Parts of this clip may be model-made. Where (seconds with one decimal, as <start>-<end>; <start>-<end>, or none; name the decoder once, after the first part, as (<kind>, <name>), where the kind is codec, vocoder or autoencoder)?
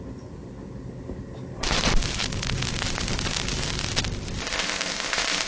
4.4-5.5 (codec, ZipCodec)